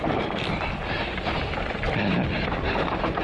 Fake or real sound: real